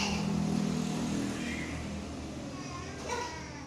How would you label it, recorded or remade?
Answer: recorded